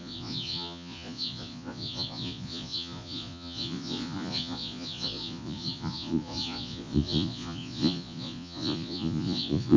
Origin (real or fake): fake